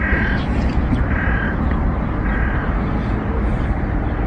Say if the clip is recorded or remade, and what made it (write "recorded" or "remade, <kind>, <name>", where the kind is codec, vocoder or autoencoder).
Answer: recorded